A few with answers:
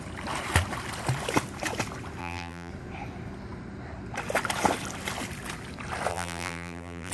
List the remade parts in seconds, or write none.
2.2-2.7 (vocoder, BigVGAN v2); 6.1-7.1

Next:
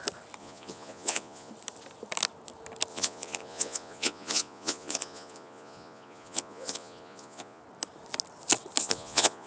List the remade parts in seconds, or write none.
0.4-1.5 (vocoder, Vocos); 2.9-7.6; 8.8-9.5

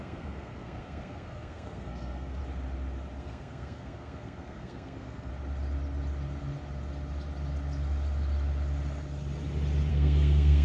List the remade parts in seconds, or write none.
0.0-2.4 (codec, SNAC); 3.2-5.3; 9.9-10.6

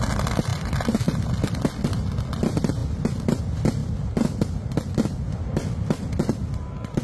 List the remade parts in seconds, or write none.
none